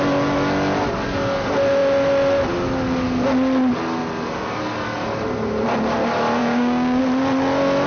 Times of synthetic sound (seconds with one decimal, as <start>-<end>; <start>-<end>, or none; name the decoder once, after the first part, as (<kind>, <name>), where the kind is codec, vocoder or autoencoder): 6.4-7.0 (codec, DAC)